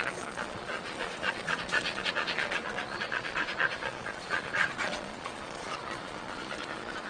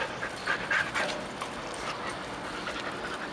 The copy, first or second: first